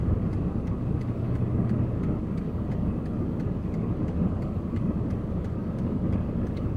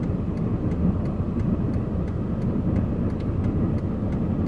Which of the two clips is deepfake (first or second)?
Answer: first